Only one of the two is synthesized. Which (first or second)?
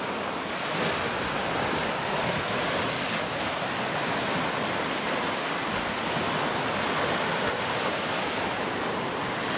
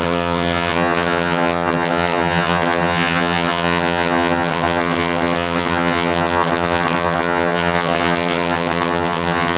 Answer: second